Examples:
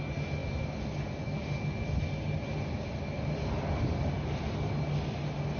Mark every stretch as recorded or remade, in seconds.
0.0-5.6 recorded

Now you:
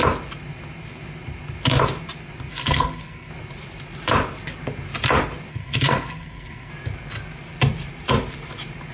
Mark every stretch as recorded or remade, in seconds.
0.0-2.5 recorded; 2.5-3.3 remade; 3.3-5.5 recorded; 5.5-6.7 remade; 6.7-8.9 recorded

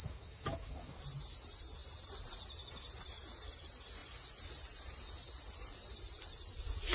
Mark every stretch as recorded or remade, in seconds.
0.0-1.0 remade; 1.0-6.9 recorded

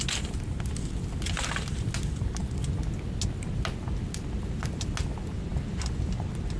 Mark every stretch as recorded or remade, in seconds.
0.0-6.6 recorded

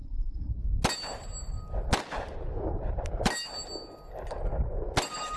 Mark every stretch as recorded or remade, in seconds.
0.0-0.5 remade; 0.5-5.4 recorded